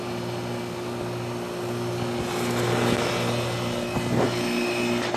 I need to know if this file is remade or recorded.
recorded